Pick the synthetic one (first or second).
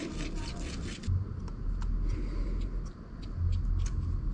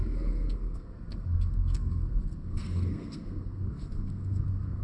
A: second